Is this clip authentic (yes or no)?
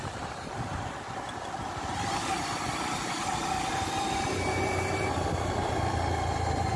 no